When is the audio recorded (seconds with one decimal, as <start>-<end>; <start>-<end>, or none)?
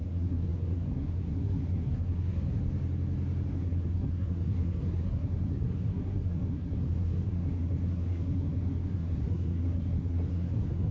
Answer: 2.6-3.5